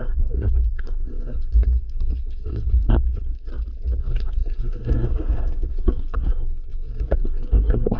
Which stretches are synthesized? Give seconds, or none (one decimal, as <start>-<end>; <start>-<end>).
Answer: 0.0-3.5; 4.0-8.0